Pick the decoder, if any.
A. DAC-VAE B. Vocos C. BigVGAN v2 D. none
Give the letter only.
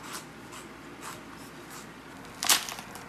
D